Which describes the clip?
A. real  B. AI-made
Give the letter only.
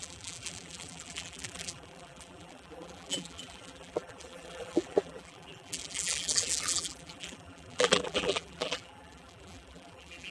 B